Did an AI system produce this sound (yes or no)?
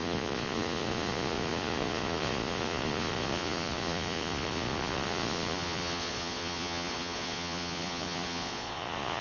yes